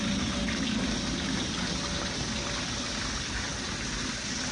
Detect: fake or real real